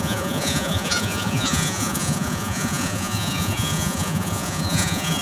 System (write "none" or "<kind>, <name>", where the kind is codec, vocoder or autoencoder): vocoder, Vocos